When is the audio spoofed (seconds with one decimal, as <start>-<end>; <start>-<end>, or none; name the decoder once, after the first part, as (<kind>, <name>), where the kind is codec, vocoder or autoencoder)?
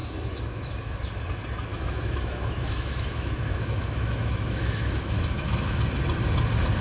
0.0-1.1 (autoencoder, DAC-VAE); 1.7-5.8